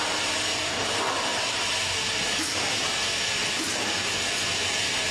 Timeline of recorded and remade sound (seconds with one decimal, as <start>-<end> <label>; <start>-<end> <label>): 0.0-5.1 recorded